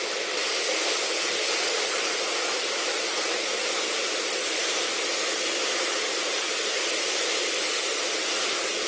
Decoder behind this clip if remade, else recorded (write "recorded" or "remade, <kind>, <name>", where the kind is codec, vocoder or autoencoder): recorded